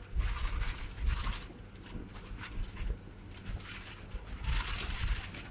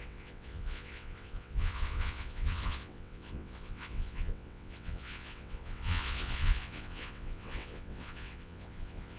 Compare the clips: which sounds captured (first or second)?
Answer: first